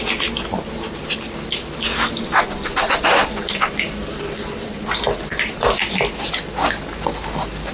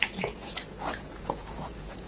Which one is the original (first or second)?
first